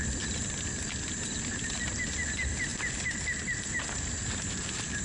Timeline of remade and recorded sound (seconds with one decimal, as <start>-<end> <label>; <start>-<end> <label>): 0.0-5.0 recorded